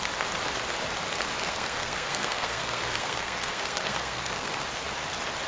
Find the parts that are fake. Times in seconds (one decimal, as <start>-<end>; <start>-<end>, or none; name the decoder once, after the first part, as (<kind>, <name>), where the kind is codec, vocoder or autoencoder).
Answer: 1.4-4.5 (codec, SNAC)